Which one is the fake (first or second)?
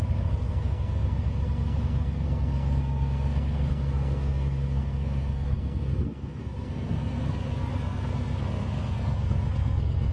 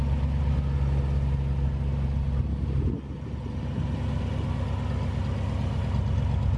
first